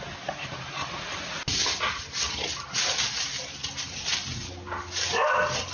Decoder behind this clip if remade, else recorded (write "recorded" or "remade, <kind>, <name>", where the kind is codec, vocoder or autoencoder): recorded